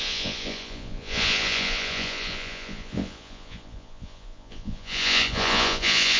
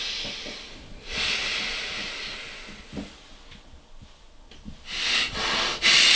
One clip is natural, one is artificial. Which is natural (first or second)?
second